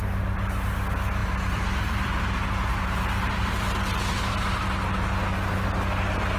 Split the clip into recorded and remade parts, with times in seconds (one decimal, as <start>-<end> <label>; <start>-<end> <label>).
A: 0.0-1.2 recorded; 1.2-2.2 remade; 2.2-2.7 recorded; 2.7-4.3 remade; 4.3-6.4 recorded